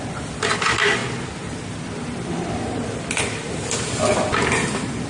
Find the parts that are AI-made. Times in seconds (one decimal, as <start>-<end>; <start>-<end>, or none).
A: none